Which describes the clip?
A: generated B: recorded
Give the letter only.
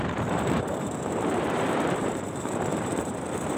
A